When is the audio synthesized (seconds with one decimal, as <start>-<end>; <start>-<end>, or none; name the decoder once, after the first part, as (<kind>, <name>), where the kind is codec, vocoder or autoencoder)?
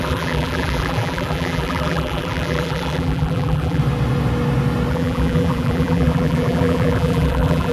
0.0-3.8 (vocoder, BigVGAN v2); 4.9-7.7